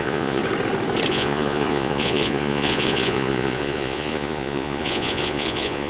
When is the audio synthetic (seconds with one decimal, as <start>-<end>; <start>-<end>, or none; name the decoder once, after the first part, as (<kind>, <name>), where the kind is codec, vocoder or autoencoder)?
0.0-0.4 (vocoder, Vocos); 1.1-5.9